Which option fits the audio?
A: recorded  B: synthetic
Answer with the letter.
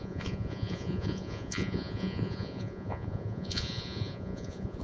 B